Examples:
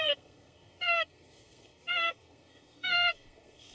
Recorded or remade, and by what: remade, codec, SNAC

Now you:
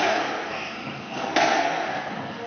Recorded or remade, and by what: remade, codec, SNAC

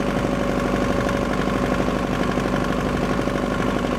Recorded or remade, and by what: recorded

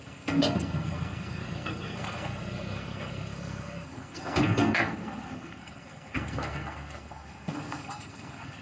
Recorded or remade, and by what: remade, codec, SNAC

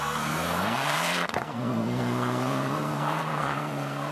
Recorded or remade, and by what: remade, codec, SNAC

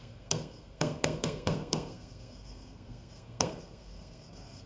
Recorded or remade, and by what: remade, codec, SNAC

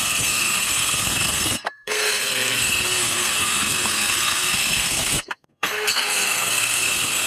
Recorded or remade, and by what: remade, codec, SNAC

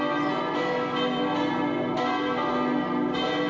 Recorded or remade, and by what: recorded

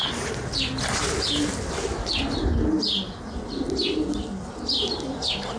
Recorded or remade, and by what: recorded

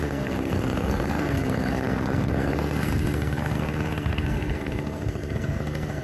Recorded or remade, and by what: remade, codec, SNAC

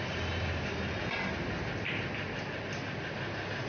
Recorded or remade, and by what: recorded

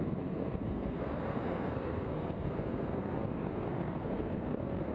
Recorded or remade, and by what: remade, codec, SNAC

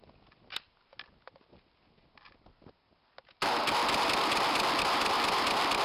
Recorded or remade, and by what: recorded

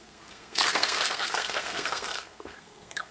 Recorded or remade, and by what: remade, codec, SNAC